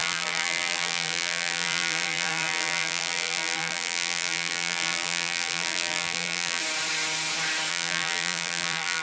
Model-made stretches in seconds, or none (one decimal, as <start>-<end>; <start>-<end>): 0.0-6.6; 7.7-9.0